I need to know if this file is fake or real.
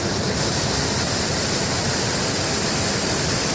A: real